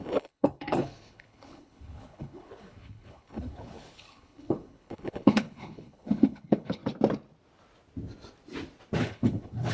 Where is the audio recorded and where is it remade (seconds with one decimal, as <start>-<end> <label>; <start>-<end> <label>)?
0.0-6.8 remade; 6.8-9.0 recorded; 9.0-9.7 remade